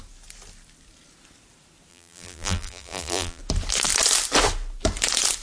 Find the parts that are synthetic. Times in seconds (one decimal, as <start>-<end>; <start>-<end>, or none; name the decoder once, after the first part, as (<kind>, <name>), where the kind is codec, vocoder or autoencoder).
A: 1.9-3.4 (vocoder, BigVGAN v2)